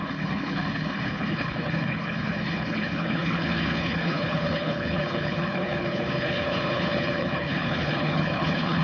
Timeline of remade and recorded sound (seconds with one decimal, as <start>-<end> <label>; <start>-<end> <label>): 0.0-8.8 remade